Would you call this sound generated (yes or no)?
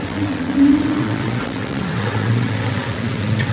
yes